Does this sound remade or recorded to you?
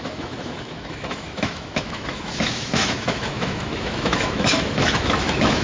remade